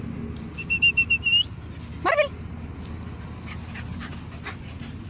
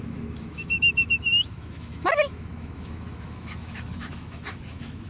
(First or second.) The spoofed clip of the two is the second